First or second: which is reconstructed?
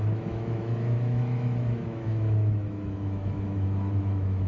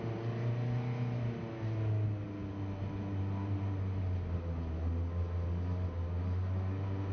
first